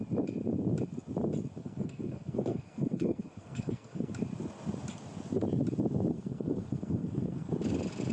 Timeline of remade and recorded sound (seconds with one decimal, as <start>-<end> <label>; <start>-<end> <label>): 0.0-1.6 recorded; 1.6-4.1 remade; 4.1-6.1 recorded; 6.1-7.5 remade; 7.5-8.1 recorded